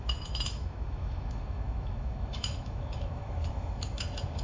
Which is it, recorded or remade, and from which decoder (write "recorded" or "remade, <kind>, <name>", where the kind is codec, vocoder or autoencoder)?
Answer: remade, autoencoder, DAC-VAE